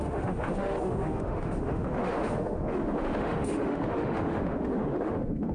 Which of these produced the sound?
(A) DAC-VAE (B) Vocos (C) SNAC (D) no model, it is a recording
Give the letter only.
A